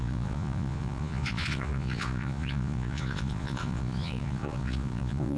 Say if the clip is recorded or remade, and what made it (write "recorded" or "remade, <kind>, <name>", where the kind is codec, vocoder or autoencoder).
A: remade, vocoder, Vocos